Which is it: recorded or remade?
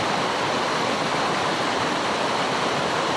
remade